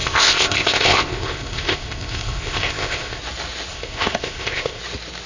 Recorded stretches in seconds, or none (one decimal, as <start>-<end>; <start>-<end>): 3.2-3.7; 4.8-5.3